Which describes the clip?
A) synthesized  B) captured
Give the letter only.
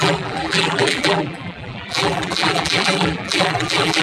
A